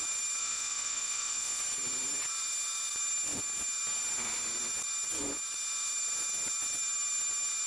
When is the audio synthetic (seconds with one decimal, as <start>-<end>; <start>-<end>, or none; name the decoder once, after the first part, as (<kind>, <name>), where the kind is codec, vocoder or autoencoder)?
0.4-1.6 (vocoder, Vocos)